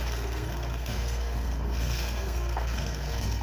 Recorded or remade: remade